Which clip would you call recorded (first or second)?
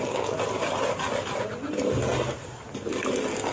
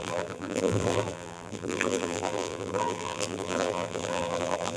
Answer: first